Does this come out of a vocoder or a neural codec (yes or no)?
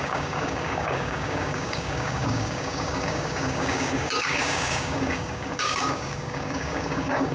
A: yes